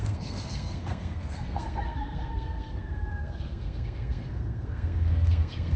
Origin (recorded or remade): remade